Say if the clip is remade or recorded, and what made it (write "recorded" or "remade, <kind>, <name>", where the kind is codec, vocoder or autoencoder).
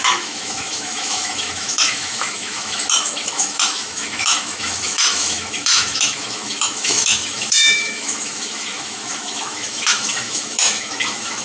remade, autoencoder, DAC-VAE